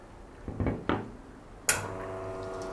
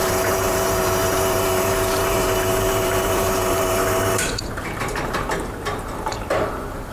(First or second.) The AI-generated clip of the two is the second